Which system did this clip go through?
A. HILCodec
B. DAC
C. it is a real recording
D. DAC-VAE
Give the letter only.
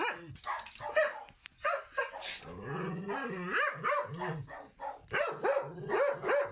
C